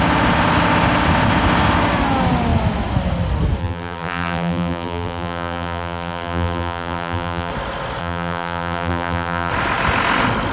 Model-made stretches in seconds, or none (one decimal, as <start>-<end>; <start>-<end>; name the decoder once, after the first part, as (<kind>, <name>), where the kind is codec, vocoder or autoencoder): 3.6-7.5 (vocoder, BigVGAN v2); 8.0-9.5